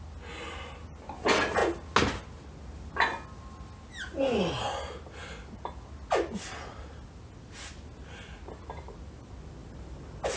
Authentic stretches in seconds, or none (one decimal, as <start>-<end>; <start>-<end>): 0.0-10.4